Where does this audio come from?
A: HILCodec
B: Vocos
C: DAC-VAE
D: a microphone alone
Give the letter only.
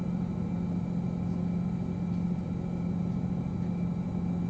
D